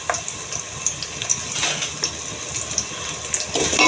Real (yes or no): yes